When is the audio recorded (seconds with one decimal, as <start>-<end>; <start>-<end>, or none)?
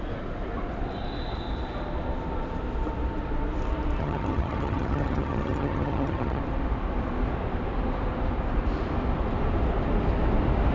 0.0-4.0; 6.4-10.7